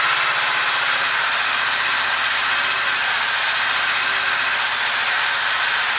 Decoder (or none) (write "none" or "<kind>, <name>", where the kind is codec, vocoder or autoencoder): none